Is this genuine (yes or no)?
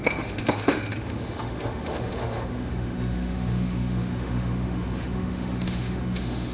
no